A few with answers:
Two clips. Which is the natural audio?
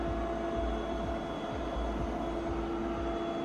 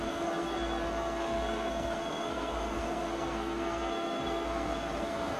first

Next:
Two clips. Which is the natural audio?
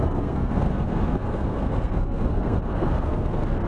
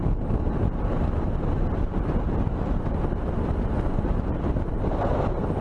second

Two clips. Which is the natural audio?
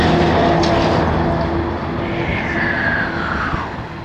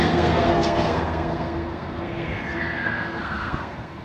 first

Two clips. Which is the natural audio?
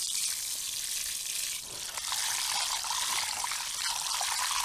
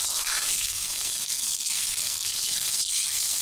first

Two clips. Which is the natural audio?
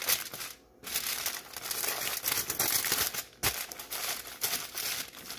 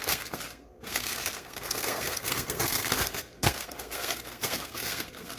first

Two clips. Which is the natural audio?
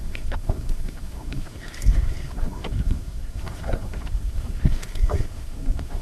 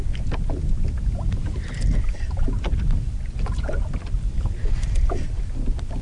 second